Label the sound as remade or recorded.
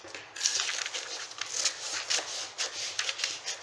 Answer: recorded